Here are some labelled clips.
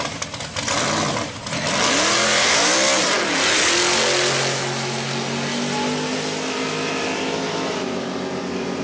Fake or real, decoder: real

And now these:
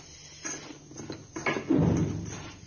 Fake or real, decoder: real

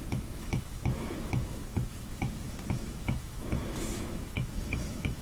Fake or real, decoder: fake, autoencoder, DAC-VAE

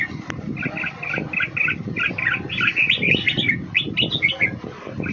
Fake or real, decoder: real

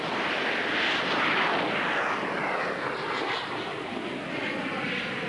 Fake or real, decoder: real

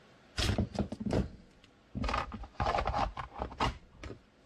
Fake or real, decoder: real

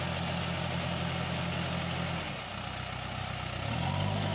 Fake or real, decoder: real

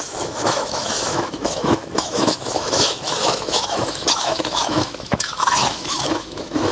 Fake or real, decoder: fake, autoencoder, DAC-VAE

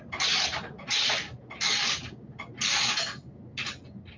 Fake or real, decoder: real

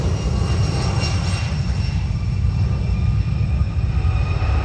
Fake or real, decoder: real